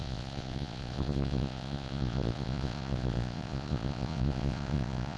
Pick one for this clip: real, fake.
fake